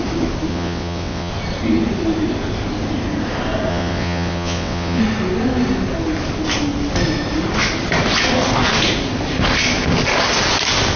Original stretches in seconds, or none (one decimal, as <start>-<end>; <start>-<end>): 0.0-0.5; 1.3-3.7; 5.0-11.0